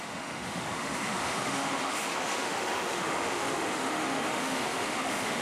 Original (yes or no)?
no